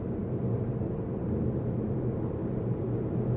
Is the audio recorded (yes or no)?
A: yes